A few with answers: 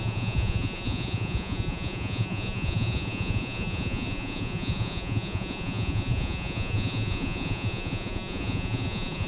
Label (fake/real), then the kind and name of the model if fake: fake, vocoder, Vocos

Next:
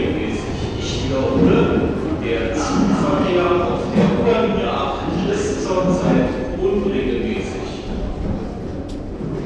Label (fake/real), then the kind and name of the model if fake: real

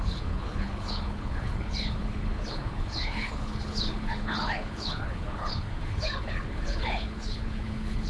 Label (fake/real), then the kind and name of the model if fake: fake, codec, HILCodec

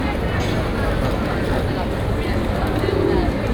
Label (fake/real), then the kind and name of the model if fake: real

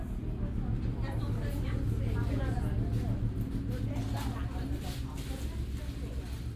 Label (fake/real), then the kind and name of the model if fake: real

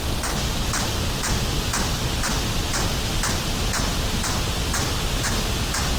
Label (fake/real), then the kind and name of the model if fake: real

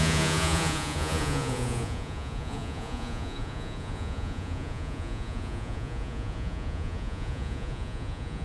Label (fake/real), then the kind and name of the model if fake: fake, vocoder, Vocos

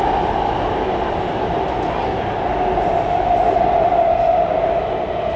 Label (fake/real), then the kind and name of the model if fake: real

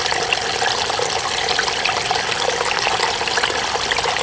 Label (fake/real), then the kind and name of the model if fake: real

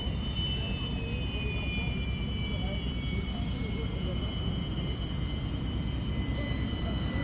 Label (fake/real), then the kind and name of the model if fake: real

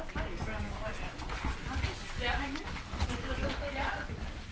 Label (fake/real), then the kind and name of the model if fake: real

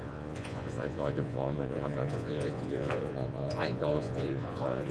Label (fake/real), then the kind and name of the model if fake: fake, vocoder, Vocos